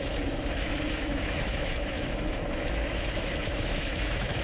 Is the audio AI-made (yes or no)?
yes